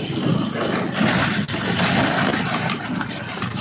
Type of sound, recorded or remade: recorded